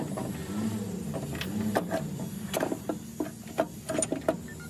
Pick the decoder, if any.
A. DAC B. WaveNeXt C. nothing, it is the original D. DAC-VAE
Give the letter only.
C